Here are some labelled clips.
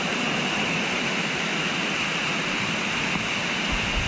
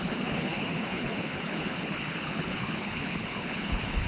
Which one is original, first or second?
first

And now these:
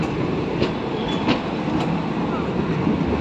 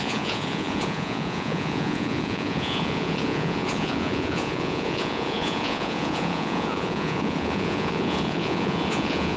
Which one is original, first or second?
first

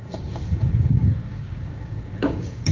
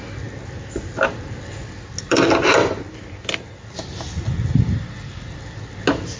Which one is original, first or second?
second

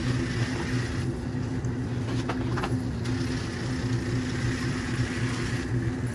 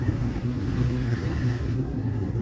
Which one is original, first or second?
first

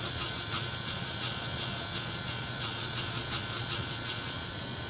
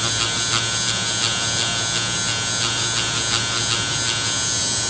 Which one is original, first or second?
second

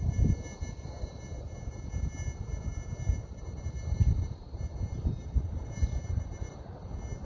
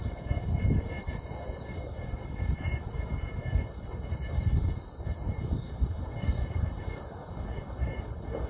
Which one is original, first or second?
first